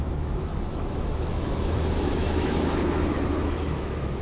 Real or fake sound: fake